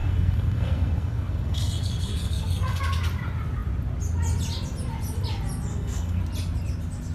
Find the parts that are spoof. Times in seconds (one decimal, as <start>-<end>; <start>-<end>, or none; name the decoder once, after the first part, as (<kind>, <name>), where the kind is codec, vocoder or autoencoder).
0.0-2.8 (codec, SNAC); 5.7-6.2